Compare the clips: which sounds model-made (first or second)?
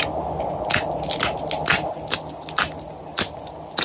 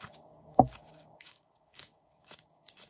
second